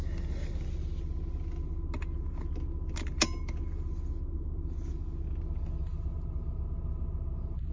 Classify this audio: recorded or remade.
recorded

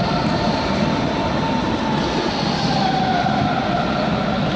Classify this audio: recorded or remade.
recorded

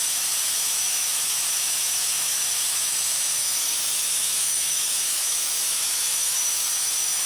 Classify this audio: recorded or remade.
remade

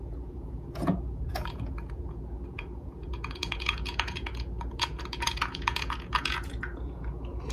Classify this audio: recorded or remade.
remade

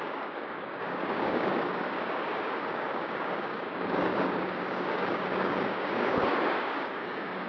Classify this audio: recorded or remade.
remade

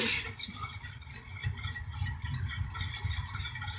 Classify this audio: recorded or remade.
recorded